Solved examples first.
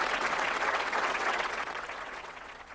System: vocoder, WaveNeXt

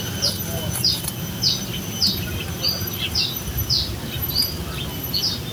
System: none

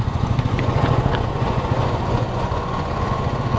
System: vocoder, Vocos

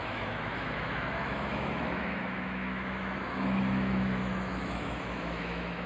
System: autoencoder, DAC-VAE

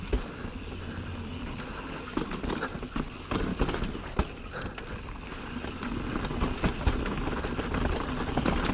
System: none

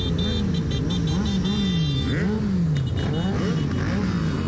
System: none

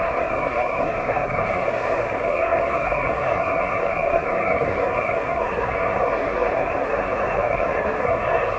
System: codec, SNAC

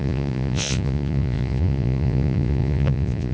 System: vocoder, Vocos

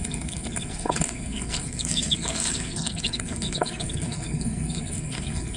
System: codec, SNAC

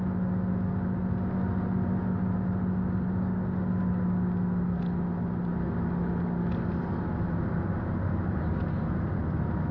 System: none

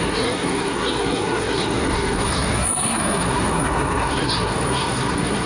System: codec, SNAC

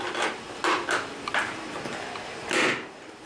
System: none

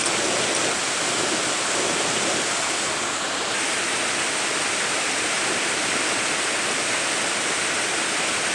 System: none